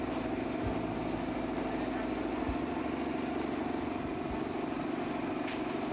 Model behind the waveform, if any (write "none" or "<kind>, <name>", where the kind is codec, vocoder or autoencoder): none